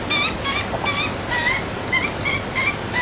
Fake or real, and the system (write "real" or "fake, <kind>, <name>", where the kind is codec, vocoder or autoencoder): real